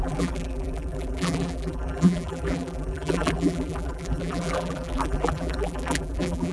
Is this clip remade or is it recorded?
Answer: remade